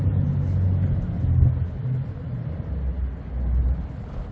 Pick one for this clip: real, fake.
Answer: real